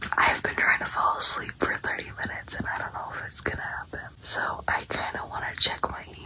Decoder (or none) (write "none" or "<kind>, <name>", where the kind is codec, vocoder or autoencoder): none